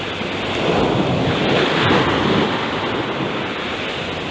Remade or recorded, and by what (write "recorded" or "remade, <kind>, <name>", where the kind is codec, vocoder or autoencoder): recorded